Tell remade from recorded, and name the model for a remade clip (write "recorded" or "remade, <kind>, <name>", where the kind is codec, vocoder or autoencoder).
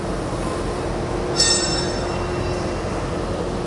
recorded